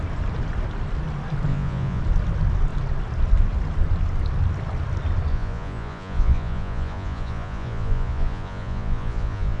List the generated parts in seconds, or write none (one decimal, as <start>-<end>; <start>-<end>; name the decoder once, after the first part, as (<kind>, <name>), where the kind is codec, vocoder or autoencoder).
1.5-2.0 (vocoder, Vocos); 5.3-9.6